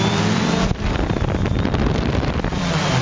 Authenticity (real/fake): fake